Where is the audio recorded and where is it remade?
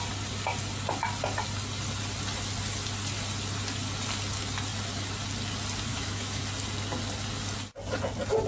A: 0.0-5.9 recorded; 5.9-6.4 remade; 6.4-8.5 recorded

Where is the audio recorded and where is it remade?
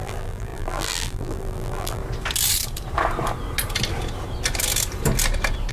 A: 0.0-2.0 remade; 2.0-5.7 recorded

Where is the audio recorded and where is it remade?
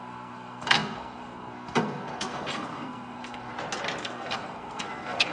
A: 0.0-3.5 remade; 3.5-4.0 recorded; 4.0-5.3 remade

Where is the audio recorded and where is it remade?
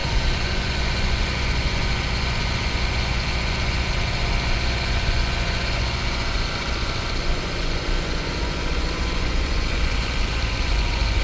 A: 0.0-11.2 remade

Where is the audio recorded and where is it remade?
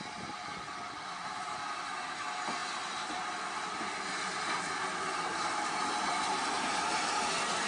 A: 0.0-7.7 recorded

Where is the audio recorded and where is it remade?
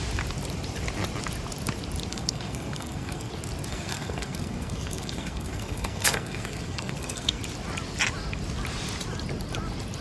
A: 0.0-2.1 recorded; 2.1-3.3 remade; 3.3-3.7 recorded; 3.7-7.4 remade; 7.4-10.0 recorded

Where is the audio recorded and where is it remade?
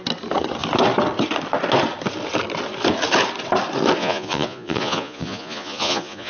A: 0.0-4.0 recorded; 4.0-6.3 remade